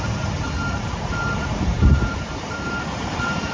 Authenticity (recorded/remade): remade